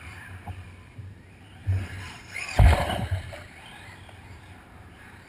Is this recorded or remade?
remade